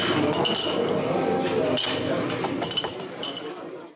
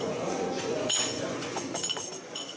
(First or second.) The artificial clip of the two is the second